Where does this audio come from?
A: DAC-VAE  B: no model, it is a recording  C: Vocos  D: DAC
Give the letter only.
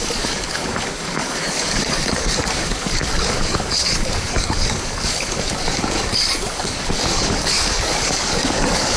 D